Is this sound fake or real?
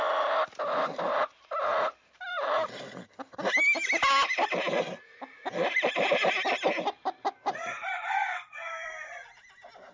fake